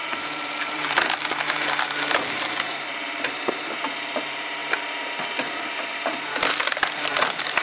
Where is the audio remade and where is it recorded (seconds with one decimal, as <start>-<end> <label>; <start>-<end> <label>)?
0.0-4.6 remade; 4.6-5.4 recorded; 5.4-7.6 remade